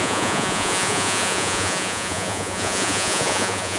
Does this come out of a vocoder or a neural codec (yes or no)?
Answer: yes